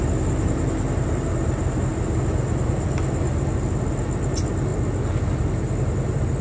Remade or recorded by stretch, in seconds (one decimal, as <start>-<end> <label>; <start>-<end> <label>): 0.0-6.4 recorded